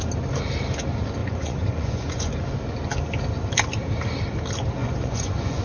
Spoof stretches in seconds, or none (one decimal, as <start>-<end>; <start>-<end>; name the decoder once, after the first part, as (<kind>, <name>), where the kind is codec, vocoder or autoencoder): 1.2-2.3 (vocoder, Vocos); 4.8-5.6